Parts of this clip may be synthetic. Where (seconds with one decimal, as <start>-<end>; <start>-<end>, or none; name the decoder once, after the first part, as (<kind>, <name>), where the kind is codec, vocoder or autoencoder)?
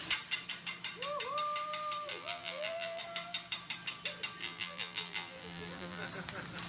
2.1-3.0 (vocoder, BigVGAN v2); 4.4-6.1